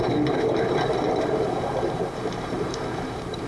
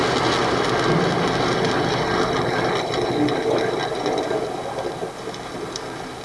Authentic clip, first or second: second